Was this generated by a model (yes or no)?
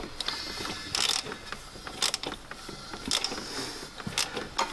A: no